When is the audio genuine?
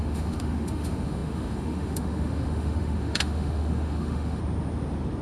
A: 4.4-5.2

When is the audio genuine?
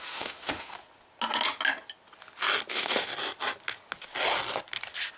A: 0.8-2.7; 3.1-5.2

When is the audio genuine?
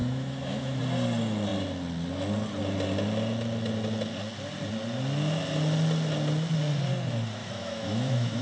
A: 0.8-7.4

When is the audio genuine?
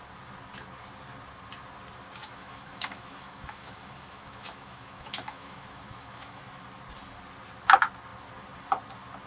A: 0.0-2.2; 6.4-9.3